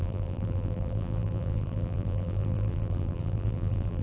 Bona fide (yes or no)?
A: no